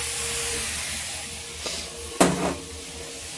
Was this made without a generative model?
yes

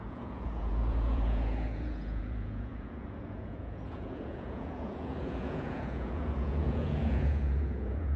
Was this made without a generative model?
no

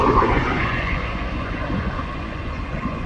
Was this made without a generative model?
no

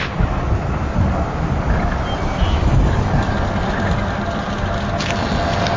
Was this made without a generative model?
yes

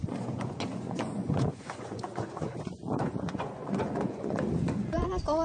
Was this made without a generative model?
no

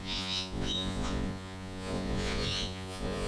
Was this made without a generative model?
no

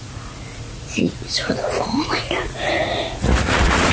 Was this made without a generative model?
no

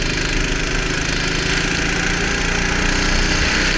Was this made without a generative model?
yes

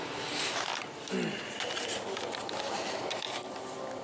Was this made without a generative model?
yes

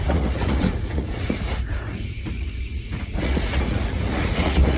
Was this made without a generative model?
no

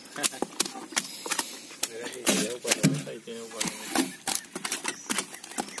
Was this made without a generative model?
yes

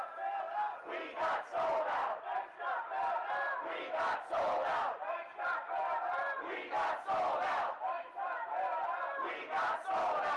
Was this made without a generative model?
yes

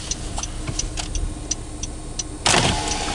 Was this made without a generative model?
yes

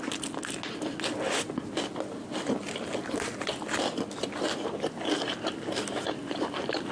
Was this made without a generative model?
yes